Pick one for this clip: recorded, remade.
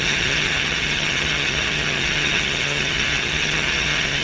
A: remade